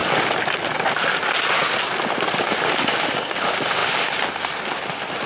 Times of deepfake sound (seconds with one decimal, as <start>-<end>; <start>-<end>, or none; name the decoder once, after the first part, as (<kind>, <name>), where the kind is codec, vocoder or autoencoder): none